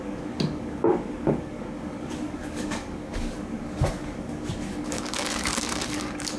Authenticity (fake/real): fake